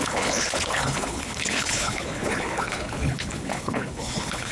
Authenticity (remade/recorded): remade